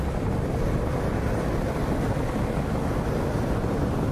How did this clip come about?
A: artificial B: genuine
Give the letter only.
B